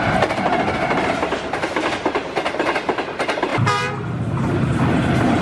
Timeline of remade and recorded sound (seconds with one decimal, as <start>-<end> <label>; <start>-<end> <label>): 0.0-5.4 recorded